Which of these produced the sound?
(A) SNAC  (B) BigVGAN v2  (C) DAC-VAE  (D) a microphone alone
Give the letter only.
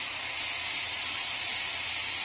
D